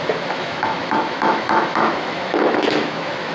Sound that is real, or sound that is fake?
fake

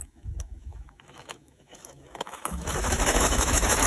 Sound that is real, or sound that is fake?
fake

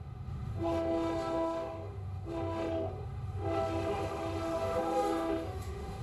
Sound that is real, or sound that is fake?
fake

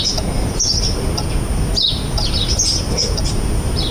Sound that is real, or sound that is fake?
real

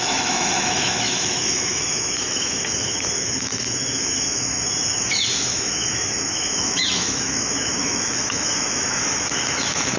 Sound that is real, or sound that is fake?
fake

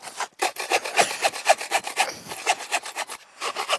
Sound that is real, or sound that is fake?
real